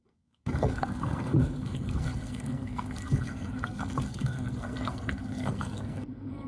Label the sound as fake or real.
fake